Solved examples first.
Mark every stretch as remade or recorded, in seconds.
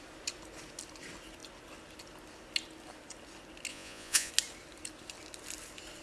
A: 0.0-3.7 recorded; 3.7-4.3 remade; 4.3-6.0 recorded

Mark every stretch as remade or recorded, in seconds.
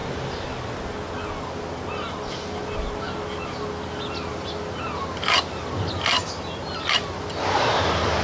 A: 0.0-8.2 recorded